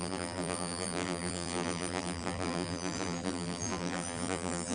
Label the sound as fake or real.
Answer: fake